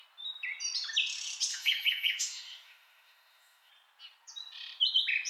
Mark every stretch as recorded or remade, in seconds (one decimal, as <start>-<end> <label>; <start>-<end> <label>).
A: 0.0-1.5 recorded; 1.5-3.7 remade; 3.7-5.3 recorded